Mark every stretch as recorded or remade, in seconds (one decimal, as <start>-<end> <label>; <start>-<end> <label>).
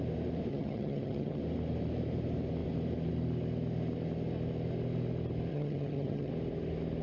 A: 0.0-0.5 recorded; 0.5-1.4 remade; 1.4-5.5 recorded; 5.5-6.3 remade; 6.3-7.0 recorded